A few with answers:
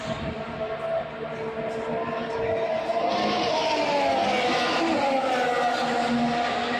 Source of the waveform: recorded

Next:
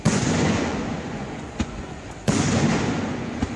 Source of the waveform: remade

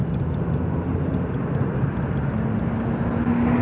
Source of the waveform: recorded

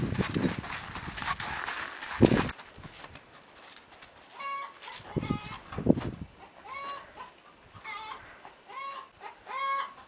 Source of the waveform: recorded